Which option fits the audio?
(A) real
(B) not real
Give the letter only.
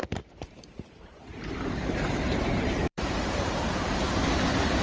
B